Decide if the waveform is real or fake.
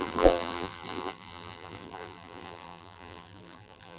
fake